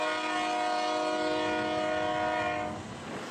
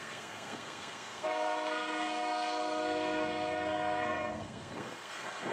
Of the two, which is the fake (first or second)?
second